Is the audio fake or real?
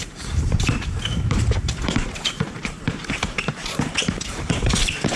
fake